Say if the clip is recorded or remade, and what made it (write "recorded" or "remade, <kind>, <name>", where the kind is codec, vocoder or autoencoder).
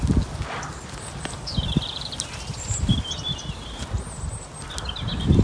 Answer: recorded